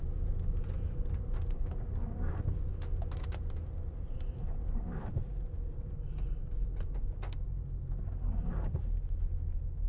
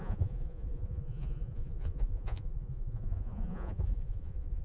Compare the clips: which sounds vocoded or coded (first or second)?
second